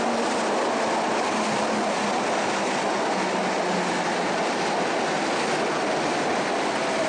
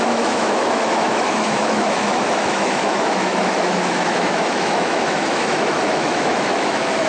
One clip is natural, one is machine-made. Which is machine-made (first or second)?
second